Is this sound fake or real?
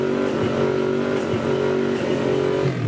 real